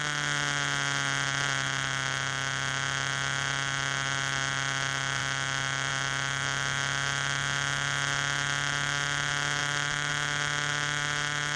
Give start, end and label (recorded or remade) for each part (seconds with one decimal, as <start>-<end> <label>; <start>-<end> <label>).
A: 0.0-9.6 recorded; 9.6-10.1 remade; 10.1-11.6 recorded